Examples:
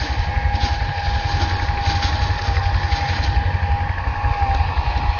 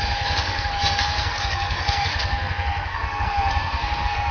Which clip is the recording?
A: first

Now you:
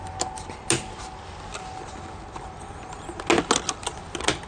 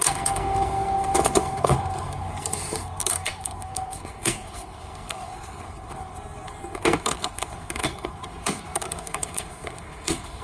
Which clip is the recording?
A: first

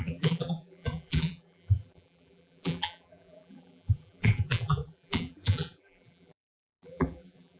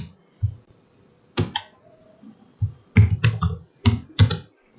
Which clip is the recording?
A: second